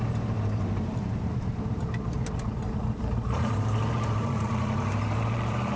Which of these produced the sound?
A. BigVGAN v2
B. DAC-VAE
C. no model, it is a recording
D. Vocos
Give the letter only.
A